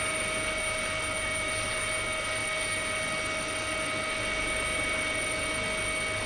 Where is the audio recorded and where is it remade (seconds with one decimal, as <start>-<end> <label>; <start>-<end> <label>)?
0.0-6.3 recorded